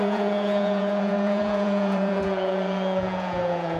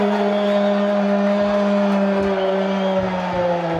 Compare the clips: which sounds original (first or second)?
second